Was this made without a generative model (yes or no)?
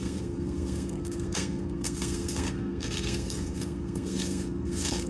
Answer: no